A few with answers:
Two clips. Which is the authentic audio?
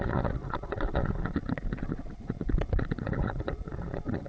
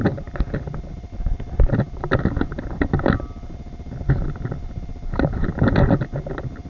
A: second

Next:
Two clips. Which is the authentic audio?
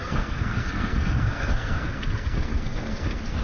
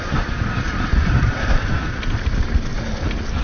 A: second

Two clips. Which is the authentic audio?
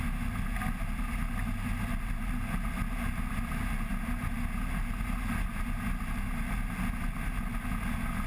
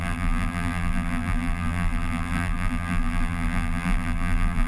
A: first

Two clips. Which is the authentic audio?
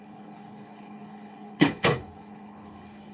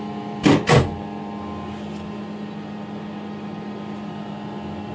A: second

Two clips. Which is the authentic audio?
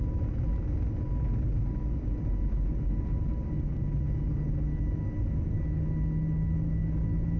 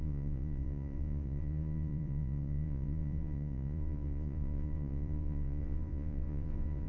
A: first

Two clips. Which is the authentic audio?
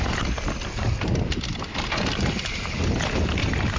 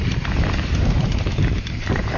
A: first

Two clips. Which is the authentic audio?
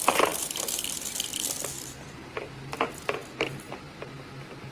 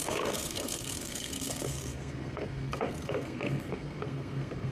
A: first